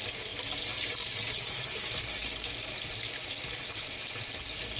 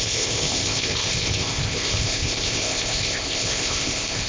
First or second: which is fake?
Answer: second